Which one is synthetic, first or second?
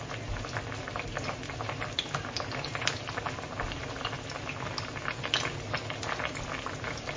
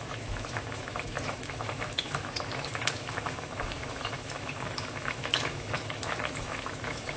second